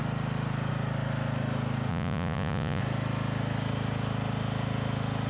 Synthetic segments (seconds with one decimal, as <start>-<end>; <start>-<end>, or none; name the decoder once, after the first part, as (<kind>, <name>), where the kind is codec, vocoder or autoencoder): 1.9-2.8 (vocoder, Vocos)